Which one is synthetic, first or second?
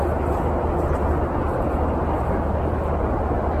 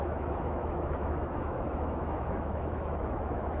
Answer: second